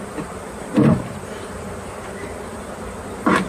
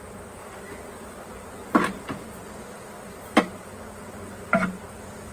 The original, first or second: second